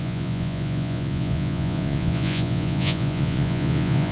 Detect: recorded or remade remade